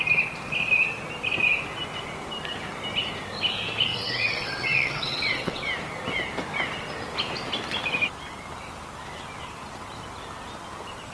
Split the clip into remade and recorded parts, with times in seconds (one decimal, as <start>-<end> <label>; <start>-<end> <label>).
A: 0.0-3.9 recorded; 3.9-5.6 remade; 5.6-11.1 recorded